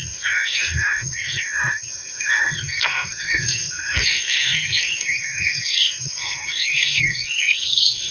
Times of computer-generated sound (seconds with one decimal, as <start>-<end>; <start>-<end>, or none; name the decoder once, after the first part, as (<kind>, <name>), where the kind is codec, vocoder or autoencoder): 0.0-8.1 (codec, SNAC)